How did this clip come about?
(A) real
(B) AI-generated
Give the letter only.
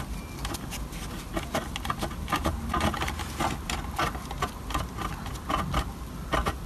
A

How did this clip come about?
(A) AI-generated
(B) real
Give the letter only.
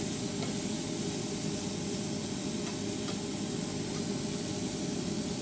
B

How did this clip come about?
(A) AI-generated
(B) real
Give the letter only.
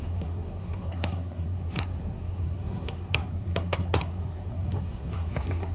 A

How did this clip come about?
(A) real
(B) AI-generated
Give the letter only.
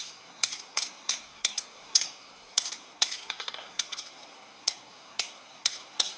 B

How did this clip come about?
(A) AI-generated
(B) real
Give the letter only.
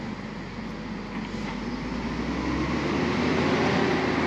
B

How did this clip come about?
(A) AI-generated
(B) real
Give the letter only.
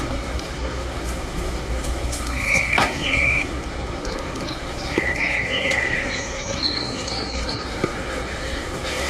A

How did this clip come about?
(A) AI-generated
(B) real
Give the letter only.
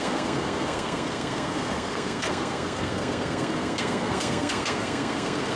A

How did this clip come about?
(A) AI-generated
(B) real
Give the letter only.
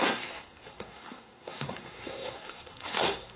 A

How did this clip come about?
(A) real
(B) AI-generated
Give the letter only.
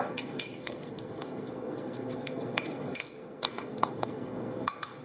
B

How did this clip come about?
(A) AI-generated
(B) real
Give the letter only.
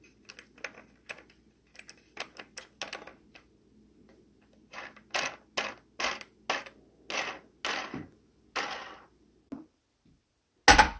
B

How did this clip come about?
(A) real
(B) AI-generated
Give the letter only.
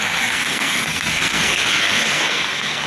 B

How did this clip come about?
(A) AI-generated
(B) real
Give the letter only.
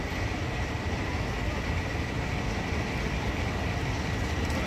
B